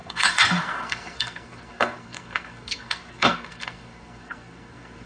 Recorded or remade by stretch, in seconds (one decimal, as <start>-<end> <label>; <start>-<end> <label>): 0.0-5.1 remade